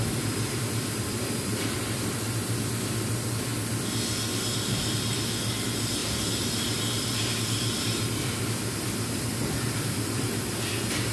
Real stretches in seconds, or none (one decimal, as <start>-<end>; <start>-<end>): 3.5-5.5; 6.0-7.4